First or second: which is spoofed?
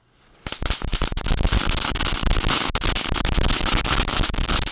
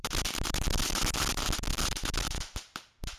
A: second